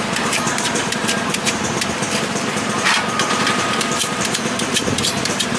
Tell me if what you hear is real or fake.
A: fake